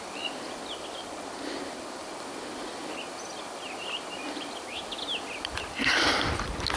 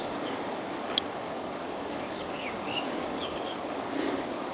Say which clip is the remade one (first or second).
second